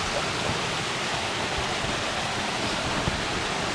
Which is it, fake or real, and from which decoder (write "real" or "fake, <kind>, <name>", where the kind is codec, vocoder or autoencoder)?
real